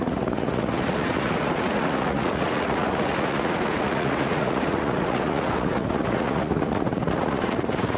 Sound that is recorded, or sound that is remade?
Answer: remade